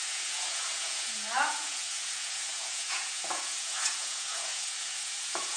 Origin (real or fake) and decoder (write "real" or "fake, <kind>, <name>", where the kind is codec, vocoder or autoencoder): fake, vocoder, Vocos